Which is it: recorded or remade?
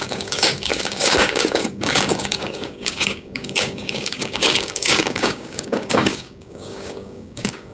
remade